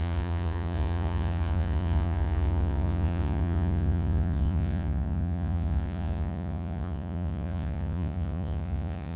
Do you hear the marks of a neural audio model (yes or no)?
yes